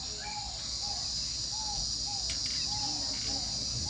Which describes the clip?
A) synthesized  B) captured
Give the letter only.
B